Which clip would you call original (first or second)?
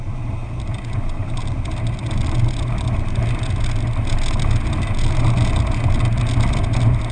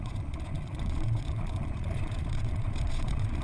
first